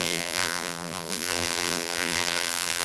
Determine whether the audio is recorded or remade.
remade